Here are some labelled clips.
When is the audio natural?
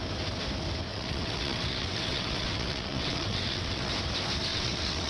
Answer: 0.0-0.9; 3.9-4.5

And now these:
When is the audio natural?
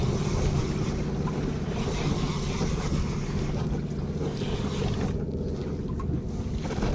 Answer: 0.0-6.9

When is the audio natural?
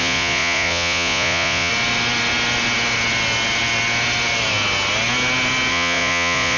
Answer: 1.7-5.7